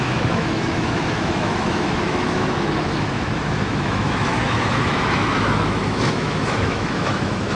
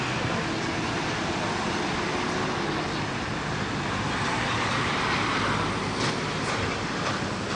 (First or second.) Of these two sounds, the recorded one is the second